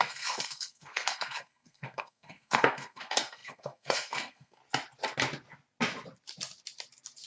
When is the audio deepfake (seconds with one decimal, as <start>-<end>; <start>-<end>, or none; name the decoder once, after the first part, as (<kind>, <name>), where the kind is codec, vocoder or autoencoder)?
0.0-4.6 (codec, SNAC)